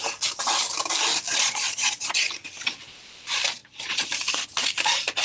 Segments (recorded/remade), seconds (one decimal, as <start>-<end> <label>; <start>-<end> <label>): 0.0-1.3 recorded; 1.3-2.1 remade; 2.1-3.6 recorded; 3.6-4.1 remade; 4.1-5.2 recorded